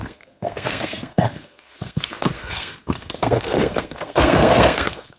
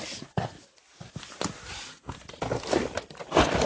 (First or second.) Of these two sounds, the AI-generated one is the first